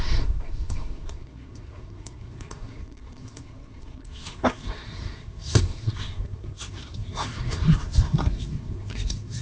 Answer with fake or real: fake